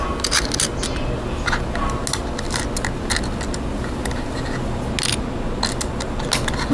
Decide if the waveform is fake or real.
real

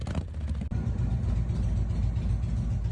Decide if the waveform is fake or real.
real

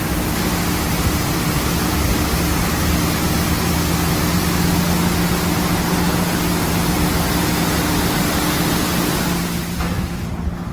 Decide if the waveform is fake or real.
real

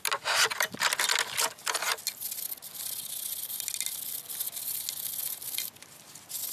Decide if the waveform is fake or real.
real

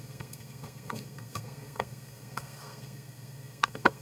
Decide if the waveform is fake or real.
fake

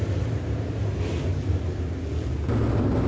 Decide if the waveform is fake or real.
real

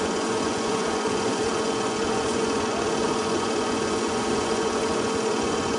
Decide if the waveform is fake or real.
fake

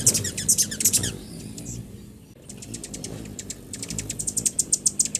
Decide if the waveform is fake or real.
real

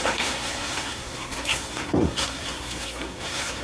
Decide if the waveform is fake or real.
fake